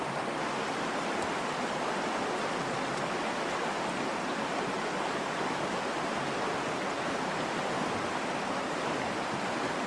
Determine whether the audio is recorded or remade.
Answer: recorded